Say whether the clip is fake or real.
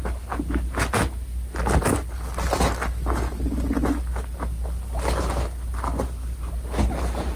real